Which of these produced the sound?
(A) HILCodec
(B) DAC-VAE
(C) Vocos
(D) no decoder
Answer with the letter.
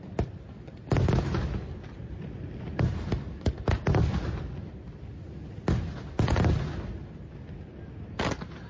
D